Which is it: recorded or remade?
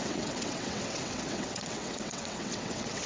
remade